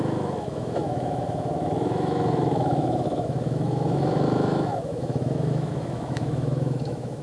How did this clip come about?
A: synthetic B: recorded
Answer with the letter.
A